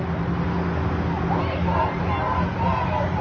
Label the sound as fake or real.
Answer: real